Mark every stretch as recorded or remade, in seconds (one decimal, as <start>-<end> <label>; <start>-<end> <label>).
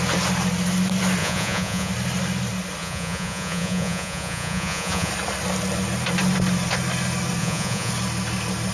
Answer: 0.0-1.2 recorded; 1.2-1.9 remade; 1.9-2.8 recorded; 2.8-5.1 remade; 5.1-7.4 recorded; 7.4-7.9 remade; 7.9-8.7 recorded